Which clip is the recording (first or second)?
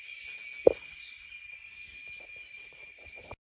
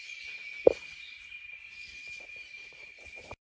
first